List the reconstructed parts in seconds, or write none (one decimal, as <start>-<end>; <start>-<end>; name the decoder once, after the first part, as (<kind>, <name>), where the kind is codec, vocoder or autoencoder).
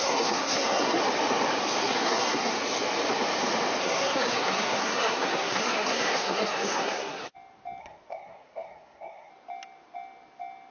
0.0-1.0 (codec, SNAC); 1.8-2.6; 3.8-7.2; 7.8-9.3